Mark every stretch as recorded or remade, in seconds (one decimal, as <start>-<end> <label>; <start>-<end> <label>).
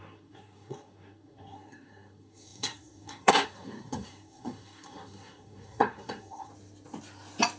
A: 0.0-6.5 remade; 6.5-7.6 recorded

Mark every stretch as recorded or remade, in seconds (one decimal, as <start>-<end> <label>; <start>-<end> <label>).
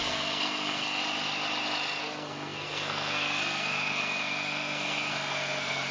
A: 0.0-1.0 remade; 1.0-2.0 recorded; 2.0-5.9 remade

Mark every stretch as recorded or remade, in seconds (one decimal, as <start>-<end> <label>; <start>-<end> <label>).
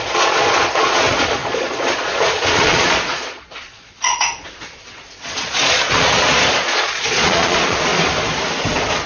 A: 0.0-7.9 remade; 7.9-9.1 recorded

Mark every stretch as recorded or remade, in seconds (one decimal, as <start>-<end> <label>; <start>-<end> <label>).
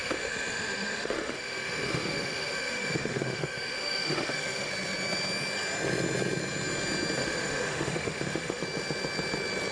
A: 0.0-4.7 remade; 4.7-7.2 recorded; 7.2-8.6 remade; 8.6-9.7 recorded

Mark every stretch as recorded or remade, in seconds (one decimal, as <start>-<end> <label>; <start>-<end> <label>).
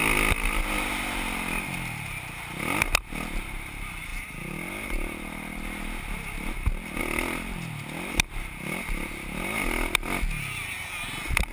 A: 0.0-11.5 recorded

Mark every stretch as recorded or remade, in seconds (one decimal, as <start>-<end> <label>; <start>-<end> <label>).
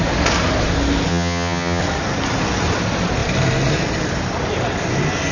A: 0.0-1.1 recorded; 1.1-1.8 remade; 1.8-5.3 recorded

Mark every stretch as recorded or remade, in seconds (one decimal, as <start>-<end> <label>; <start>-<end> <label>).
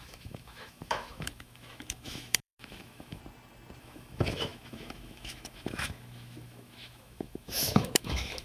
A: 0.0-3.2 remade; 3.2-3.8 recorded; 3.8-8.4 remade